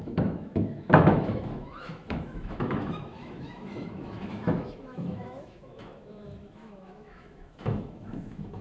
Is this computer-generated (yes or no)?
yes